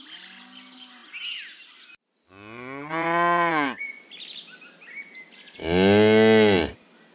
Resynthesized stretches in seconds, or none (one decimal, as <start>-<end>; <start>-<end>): 2.3-4.1